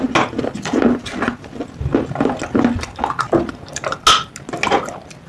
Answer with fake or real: real